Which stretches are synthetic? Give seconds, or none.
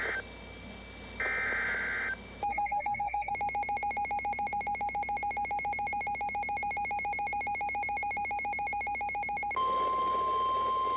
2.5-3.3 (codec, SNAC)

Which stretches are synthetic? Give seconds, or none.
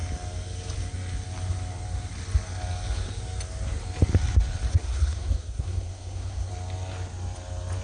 4.7-6.5 (codec, SNAC)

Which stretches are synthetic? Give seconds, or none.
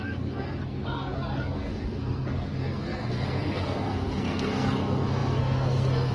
0.0-6.1 (codec, SNAC)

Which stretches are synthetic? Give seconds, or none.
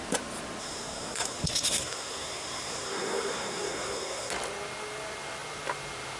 0.6-4.3 (codec, SNAC)